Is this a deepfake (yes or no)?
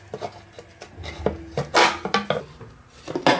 no